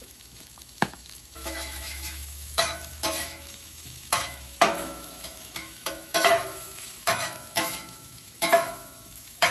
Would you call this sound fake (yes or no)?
yes